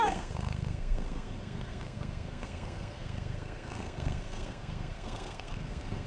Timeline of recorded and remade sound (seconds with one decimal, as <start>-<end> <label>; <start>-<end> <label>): 0.0-6.1 remade